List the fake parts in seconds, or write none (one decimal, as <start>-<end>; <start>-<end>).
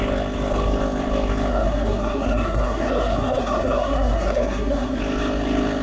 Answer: 1.5-5.0